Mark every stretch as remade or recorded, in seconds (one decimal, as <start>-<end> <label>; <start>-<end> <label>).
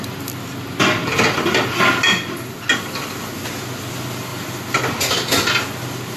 0.0-6.2 recorded